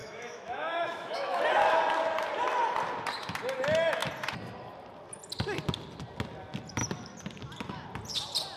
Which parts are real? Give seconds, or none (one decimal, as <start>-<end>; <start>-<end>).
1.4-8.6